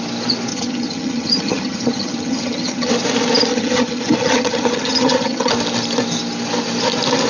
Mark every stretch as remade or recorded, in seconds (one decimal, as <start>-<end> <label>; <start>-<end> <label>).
0.0-0.5 recorded; 0.5-2.9 remade; 2.9-3.5 recorded; 3.5-5.5 remade; 5.5-7.3 recorded